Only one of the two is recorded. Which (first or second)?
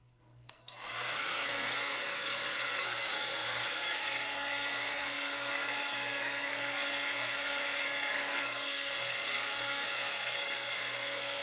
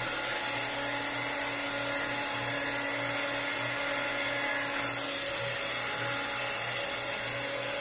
second